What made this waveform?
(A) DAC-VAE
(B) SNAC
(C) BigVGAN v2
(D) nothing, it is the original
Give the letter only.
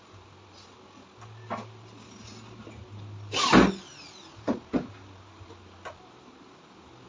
D